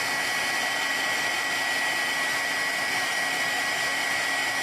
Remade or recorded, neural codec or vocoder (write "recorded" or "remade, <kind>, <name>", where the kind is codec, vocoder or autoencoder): recorded